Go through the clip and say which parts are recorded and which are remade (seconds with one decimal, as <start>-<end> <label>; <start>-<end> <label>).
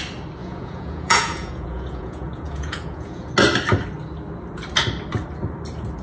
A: 0.0-0.4 recorded; 0.4-3.3 remade; 3.3-6.0 recorded